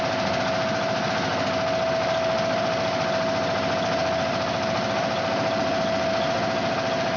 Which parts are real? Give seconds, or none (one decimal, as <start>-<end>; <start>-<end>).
0.0-7.2